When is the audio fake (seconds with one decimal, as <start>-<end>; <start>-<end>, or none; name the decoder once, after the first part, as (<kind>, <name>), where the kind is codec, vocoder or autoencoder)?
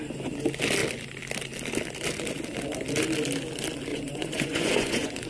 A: 3.9-5.3 (vocoder, Vocos)